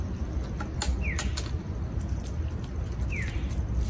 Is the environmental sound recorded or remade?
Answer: recorded